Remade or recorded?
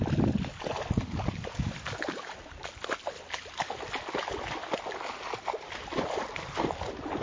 recorded